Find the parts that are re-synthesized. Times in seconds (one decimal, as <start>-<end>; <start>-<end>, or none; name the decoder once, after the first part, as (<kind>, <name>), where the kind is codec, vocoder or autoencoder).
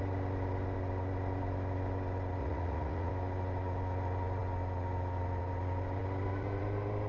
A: 2.4-3.1 (vocoder, Vocos)